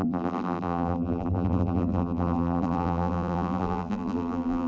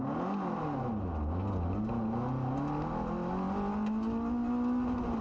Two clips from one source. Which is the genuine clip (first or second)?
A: second